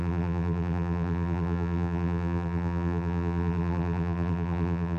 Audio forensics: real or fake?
fake